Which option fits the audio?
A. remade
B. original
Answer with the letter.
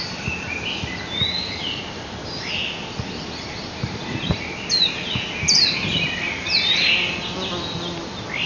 B